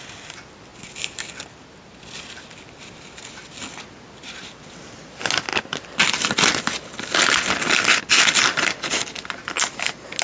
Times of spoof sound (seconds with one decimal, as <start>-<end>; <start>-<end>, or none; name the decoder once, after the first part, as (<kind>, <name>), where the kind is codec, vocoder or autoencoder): none